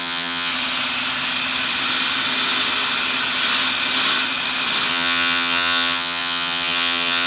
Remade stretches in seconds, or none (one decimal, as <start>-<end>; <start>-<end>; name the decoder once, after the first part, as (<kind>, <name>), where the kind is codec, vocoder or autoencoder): 0.0-0.5 (vocoder, HiFi-GAN); 4.9-7.3